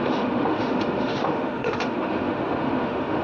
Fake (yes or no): yes